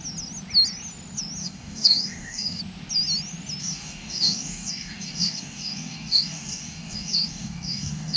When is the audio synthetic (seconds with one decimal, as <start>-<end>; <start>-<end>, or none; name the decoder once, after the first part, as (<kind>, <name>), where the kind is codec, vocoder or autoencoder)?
1.4-2.6 (codec, DAC); 3.6-8.2